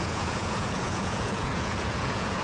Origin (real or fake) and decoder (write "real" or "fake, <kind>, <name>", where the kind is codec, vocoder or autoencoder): fake, vocoder, Vocos